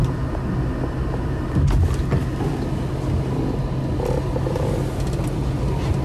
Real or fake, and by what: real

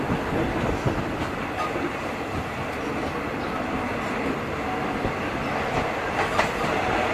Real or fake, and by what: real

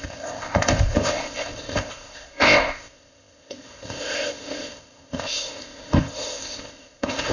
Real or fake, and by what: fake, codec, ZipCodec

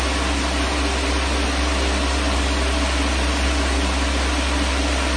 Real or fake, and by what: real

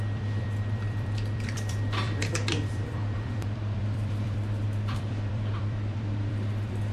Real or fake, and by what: fake, vocoder, BigVGAN v2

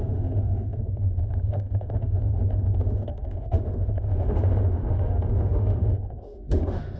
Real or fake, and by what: fake, autoencoder, DAC-VAE